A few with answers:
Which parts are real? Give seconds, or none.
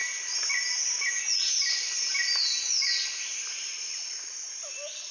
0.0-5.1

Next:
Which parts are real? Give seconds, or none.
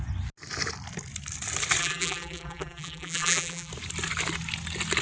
0.0-1.8; 3.7-5.0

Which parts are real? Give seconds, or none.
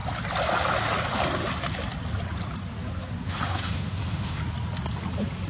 0.0-3.3; 4.4-5.5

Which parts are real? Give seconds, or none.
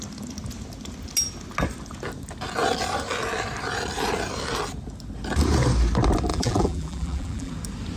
0.0-6.3; 7.5-8.0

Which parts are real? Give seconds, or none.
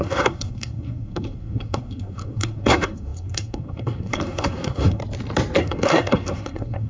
5.0-5.6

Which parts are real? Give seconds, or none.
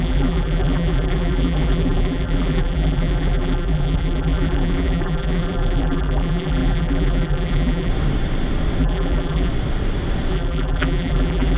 7.9-8.8; 9.5-10.3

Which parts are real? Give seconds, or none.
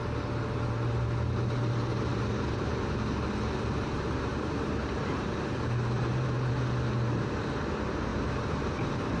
0.0-1.9; 6.5-8.1